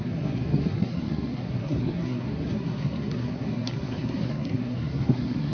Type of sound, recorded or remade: remade